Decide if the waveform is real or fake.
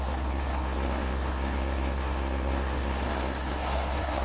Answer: fake